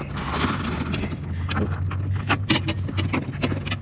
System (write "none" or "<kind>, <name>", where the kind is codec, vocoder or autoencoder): none